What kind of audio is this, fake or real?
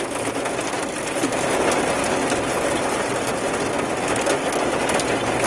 real